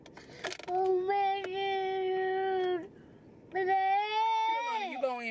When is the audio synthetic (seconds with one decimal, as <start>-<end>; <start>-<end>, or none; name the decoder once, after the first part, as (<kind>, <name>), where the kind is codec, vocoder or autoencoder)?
4.5-5.3 (autoencoder, DAC-VAE)